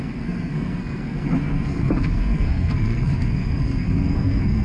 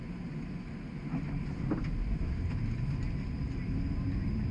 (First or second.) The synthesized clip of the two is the first